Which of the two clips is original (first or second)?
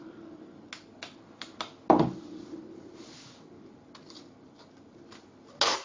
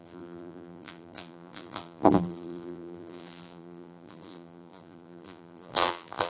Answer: first